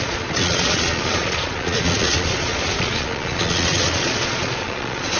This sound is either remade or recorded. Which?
remade